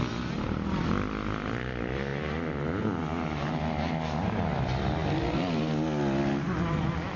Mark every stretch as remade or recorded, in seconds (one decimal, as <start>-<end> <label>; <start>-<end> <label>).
0.0-7.2 recorded